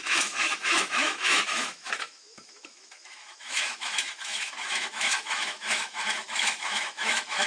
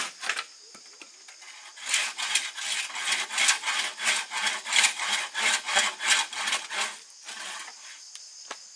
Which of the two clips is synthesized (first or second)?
first